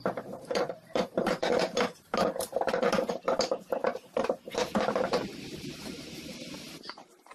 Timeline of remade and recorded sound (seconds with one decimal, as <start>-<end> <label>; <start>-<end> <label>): 0.0-1.5 remade; 1.5-3.1 recorded; 3.1-7.3 remade

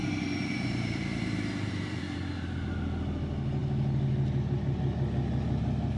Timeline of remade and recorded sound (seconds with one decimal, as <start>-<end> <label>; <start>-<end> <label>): 0.0-2.0 remade; 2.0-6.0 recorded

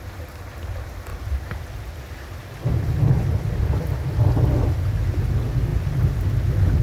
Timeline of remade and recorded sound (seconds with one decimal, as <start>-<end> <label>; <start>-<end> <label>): 0.0-6.8 recorded

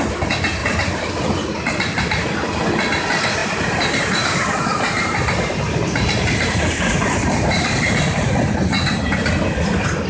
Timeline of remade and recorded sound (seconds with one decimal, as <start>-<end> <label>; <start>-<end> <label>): 0.0-0.6 recorded; 0.6-1.1 remade; 1.1-3.4 recorded; 3.4-8.3 remade; 8.3-10.1 recorded